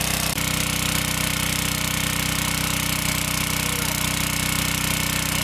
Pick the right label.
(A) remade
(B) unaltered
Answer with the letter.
B